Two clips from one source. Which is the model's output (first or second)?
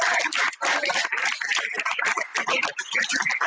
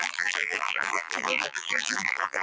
second